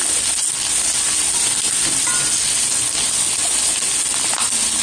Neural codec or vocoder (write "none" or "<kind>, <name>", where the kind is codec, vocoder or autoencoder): none